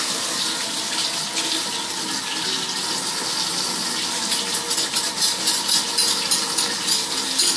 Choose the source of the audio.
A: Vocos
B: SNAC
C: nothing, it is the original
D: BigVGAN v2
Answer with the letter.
C